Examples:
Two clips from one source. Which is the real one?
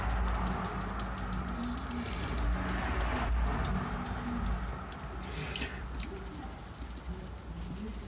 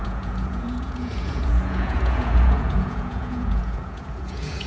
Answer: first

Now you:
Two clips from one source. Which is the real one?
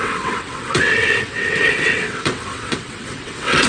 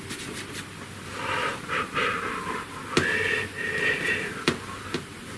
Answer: second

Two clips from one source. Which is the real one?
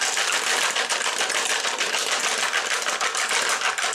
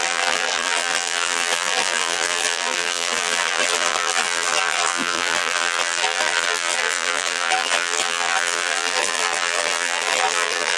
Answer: first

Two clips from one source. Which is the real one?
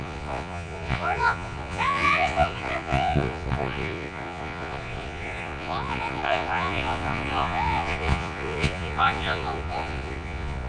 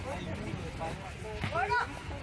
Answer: second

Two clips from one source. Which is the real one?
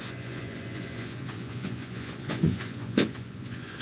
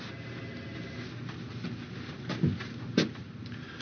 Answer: second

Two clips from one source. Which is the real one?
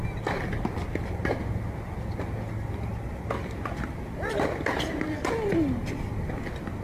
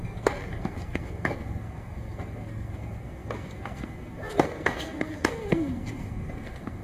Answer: first